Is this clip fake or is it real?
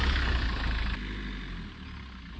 real